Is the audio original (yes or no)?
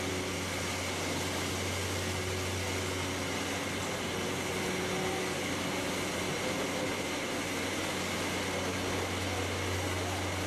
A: yes